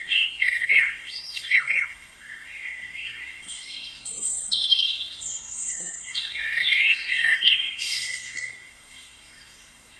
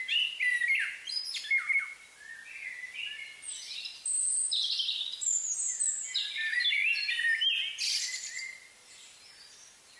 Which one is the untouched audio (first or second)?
second